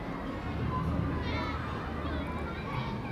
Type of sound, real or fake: real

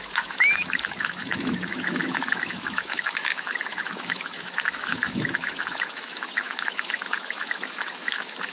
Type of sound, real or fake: fake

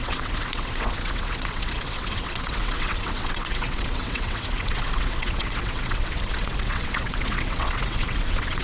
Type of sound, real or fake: fake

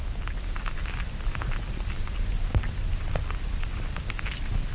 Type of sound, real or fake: real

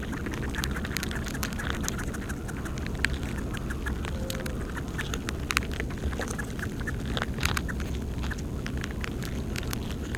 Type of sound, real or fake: real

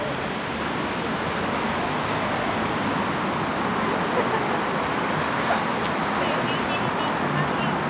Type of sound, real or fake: real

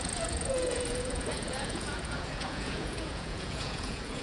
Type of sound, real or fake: fake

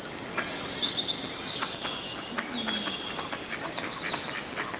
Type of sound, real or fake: real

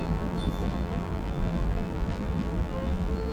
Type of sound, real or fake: fake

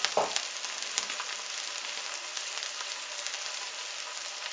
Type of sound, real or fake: real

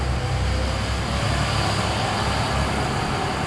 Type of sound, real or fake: real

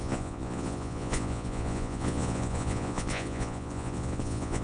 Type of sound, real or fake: fake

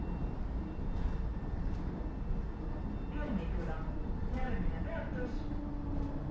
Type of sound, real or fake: real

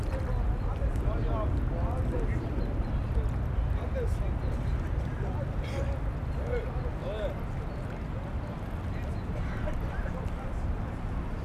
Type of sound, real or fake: real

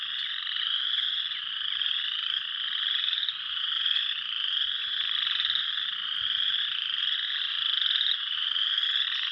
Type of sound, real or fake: real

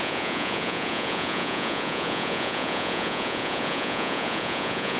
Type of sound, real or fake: fake